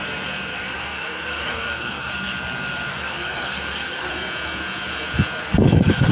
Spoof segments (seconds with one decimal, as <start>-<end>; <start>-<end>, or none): 0.5-2.1; 2.9-4.1; 5.4-6.1